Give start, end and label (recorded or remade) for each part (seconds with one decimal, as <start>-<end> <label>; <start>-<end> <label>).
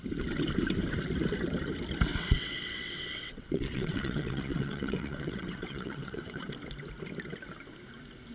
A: 0.0-2.1 recorded; 2.1-6.5 remade; 6.5-8.3 recorded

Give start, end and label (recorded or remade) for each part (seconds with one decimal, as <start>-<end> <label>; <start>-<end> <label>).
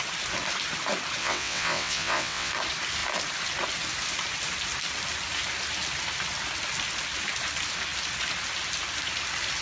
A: 0.0-1.2 recorded; 1.2-2.5 remade; 2.5-9.6 recorded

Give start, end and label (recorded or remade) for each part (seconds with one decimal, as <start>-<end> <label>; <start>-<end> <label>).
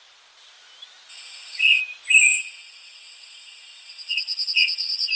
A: 0.0-1.1 recorded; 1.1-1.8 remade; 1.8-2.3 recorded; 2.3-5.1 remade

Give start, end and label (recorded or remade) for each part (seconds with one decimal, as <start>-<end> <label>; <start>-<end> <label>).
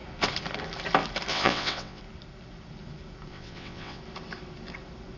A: 0.0-1.3 recorded; 1.3-2.0 remade; 2.0-3.3 recorded; 3.3-4.0 remade; 4.0-5.2 recorded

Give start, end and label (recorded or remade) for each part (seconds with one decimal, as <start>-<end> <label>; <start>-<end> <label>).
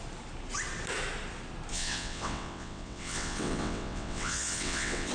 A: 0.0-1.7 recorded; 1.7-5.1 remade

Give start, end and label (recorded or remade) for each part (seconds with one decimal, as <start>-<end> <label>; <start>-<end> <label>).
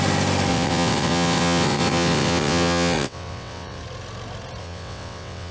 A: 0.0-0.5 recorded; 0.5-3.8 remade; 3.8-4.6 recorded; 4.6-5.5 remade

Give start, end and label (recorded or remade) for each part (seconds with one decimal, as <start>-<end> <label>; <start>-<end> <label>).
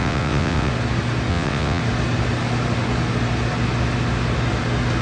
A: 0.0-0.7 remade; 0.7-1.3 recorded; 1.3-1.8 remade; 1.8-5.0 recorded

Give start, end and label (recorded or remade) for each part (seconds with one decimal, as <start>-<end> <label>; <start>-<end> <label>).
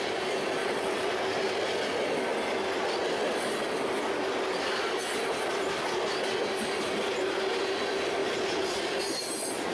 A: 0.0-0.6 recorded; 0.6-1.1 remade; 1.1-9.7 recorded